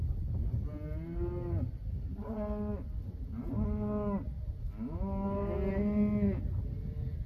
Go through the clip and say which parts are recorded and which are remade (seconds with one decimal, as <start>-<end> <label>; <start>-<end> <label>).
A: 0.0-7.3 recorded